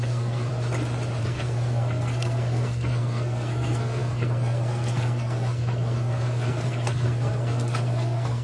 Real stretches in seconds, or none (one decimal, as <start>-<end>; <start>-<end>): 0.5-1.2